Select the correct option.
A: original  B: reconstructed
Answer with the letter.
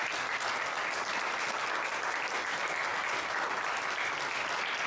A